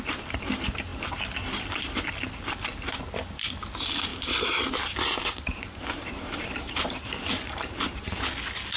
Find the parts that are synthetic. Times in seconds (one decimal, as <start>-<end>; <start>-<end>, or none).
4.1-8.3